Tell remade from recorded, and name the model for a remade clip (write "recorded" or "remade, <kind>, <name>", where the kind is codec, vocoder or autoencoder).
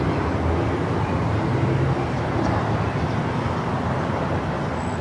recorded